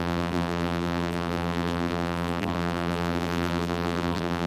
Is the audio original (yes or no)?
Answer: no